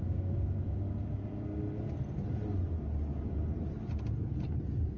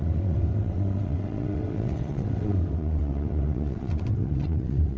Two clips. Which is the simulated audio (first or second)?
second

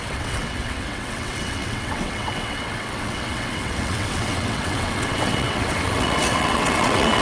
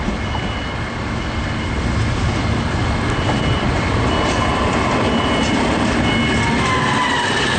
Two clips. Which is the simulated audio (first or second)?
first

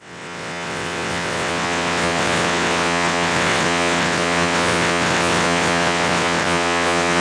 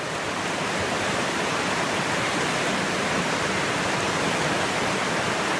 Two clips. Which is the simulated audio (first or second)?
first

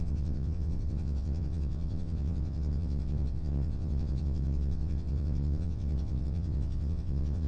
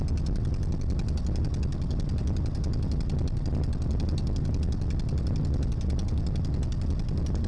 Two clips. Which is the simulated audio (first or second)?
first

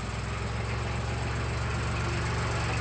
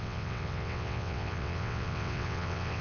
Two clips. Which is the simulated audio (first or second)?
second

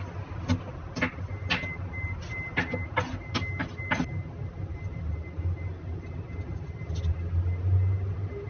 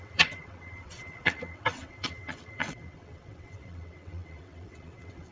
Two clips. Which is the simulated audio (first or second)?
second